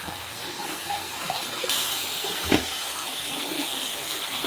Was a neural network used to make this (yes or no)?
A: yes